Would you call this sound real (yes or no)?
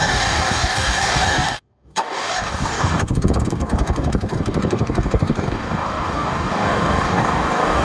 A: no